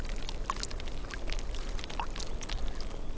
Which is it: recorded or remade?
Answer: recorded